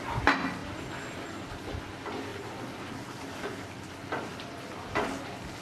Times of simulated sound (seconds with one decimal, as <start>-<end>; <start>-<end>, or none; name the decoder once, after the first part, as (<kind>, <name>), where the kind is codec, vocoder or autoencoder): none